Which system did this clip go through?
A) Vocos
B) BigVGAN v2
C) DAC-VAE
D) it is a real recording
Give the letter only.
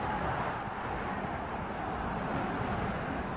D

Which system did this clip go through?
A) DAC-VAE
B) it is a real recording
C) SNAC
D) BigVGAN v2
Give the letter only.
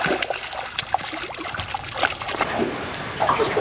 B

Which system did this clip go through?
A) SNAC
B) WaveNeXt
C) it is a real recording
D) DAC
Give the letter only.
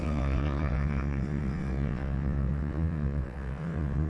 B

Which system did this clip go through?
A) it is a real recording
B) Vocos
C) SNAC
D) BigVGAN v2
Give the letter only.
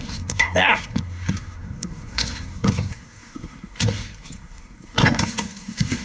C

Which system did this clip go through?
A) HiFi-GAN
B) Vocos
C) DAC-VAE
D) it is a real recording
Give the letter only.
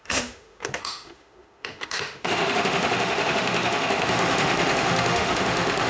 C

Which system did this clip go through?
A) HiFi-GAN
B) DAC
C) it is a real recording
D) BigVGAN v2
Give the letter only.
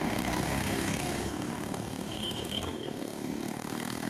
B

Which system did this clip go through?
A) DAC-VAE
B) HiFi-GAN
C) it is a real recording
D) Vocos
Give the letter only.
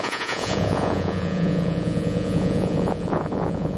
D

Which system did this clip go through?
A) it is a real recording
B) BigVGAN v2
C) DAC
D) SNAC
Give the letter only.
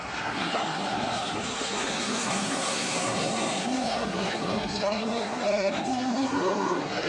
D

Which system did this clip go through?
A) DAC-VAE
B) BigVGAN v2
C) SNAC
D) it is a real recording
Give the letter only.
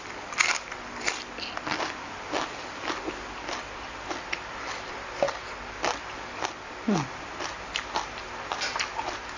D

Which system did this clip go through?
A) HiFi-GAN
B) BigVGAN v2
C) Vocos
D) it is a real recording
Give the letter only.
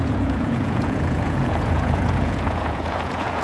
C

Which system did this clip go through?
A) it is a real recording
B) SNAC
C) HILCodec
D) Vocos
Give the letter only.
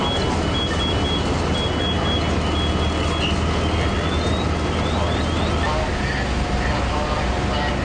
A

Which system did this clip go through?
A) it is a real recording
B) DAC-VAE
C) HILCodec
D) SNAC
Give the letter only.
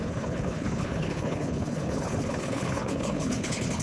C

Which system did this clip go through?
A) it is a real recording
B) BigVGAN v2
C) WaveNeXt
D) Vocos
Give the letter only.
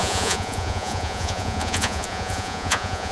D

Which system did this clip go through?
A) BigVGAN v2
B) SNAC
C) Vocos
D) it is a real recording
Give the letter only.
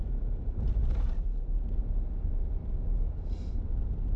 D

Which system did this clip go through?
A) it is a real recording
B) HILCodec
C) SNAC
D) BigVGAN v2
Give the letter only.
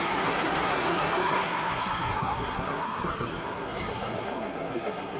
C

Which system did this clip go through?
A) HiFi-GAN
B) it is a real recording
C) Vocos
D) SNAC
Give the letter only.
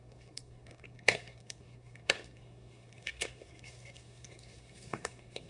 D